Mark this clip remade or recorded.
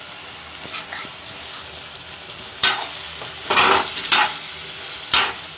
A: recorded